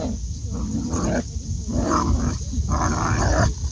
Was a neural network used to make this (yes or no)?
no